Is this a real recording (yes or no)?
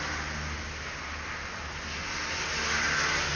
yes